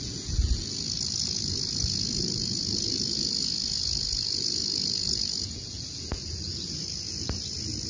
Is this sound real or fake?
fake